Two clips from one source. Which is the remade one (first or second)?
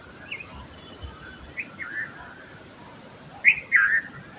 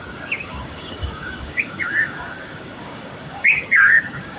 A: second